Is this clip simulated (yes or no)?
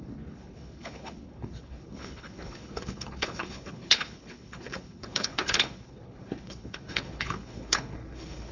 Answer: yes